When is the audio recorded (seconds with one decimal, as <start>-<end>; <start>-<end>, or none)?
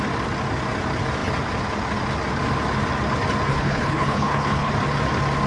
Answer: 0.0-3.5; 4.7-5.5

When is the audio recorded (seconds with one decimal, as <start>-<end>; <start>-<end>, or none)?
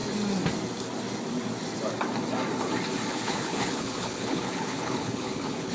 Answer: 0.0-3.1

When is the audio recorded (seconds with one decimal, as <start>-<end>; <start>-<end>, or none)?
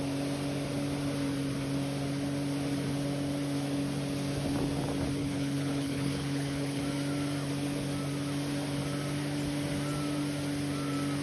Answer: 0.0-5.2; 6.8-11.2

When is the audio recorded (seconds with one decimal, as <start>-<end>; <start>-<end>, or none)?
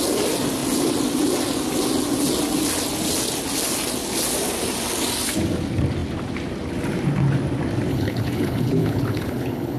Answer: 0.0-7.9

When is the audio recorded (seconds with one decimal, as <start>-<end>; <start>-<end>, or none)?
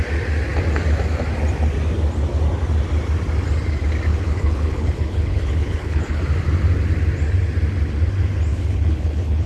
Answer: 0.0-4.1; 6.2-8.5